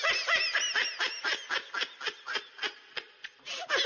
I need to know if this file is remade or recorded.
recorded